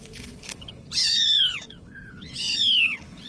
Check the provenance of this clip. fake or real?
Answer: fake